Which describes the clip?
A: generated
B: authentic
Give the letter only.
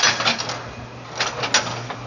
B